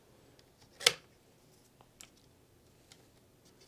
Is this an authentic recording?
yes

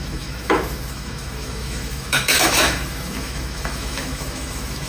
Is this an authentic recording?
no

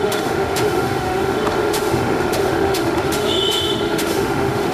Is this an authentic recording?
no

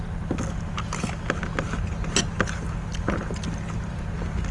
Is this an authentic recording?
yes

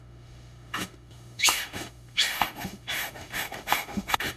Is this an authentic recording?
no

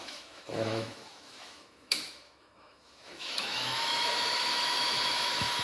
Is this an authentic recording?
no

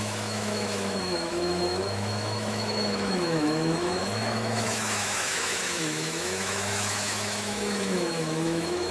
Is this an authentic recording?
no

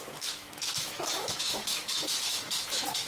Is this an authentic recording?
no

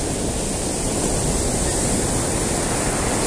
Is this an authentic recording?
yes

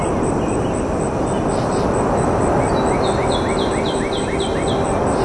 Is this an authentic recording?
yes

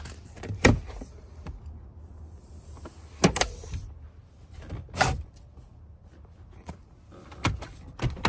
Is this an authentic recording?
yes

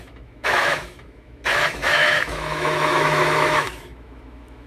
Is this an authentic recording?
no